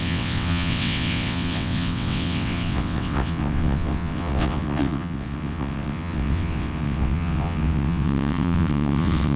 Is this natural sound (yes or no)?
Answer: no